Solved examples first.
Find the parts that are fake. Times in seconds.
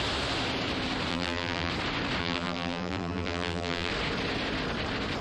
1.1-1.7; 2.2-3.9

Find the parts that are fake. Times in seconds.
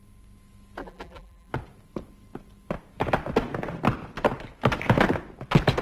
0.8-1.5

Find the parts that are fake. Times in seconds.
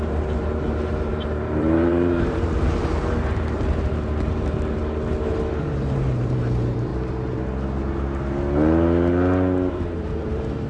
0.0-4.8; 5.6-6.9; 9.7-10.7